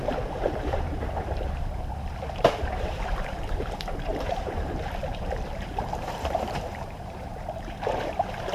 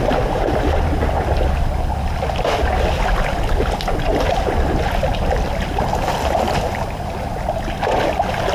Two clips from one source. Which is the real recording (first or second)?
second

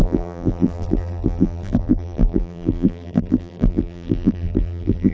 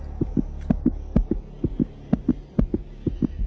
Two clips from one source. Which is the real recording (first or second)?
second